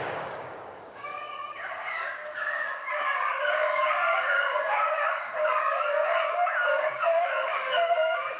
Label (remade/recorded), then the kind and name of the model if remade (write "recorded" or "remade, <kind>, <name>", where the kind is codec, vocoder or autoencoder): remade, codec, DAC